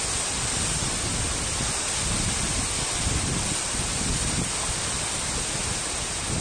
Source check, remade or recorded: recorded